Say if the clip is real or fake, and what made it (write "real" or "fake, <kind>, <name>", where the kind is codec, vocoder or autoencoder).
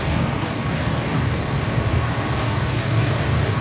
fake, codec, DAC